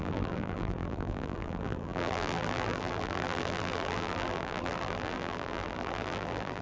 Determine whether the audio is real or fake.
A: fake